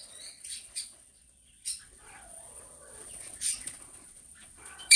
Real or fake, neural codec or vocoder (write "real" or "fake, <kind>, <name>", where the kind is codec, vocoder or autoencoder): fake, vocoder, Vocos